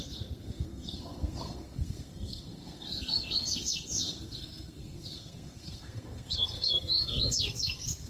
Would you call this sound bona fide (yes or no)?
no